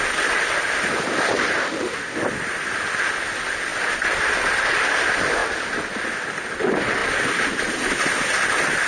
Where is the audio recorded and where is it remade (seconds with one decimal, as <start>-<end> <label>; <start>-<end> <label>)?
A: 0.0-1.6 recorded; 1.6-2.2 remade; 2.2-8.9 recorded